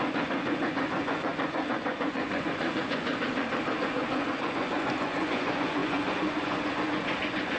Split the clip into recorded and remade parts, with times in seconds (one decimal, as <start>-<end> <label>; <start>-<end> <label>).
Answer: 0.0-3.1 remade; 3.1-3.8 recorded; 3.8-7.6 remade